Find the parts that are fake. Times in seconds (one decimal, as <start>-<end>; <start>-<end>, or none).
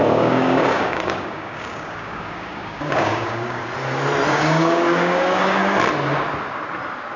0.0-3.6; 4.3-5.6